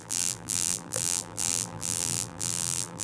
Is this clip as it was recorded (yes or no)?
no